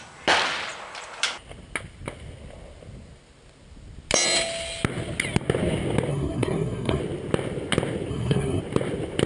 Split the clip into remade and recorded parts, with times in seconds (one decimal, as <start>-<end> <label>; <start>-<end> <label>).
0.0-6.1 recorded; 6.1-7.0 remade; 7.0-8.1 recorded; 8.1-8.6 remade; 8.6-9.3 recorded